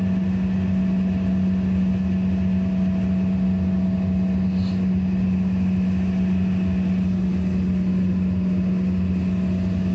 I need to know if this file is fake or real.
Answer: real